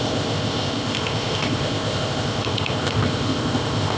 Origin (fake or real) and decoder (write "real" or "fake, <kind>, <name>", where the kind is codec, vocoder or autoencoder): fake, codec, ZipCodec